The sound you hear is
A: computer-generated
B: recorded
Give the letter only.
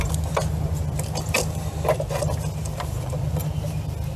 B